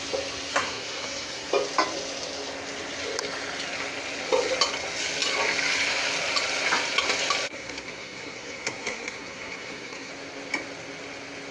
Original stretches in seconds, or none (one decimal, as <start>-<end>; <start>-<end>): 0.0-0.5; 1.5-7.5; 10.1-11.5